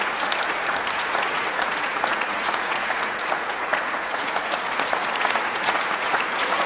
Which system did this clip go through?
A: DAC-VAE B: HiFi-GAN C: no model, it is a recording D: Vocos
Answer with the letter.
D